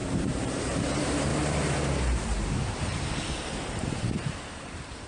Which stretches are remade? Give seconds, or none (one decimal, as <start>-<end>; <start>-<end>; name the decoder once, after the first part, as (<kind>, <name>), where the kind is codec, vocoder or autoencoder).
0.0-5.1 (vocoder, BigVGAN v2)